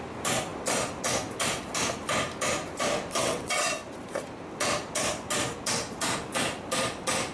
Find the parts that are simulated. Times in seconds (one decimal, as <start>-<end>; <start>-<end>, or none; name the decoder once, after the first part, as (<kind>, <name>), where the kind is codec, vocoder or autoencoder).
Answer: 3.2-3.7 (vocoder, WaveNeXt)